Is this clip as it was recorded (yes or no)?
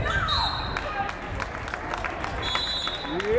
yes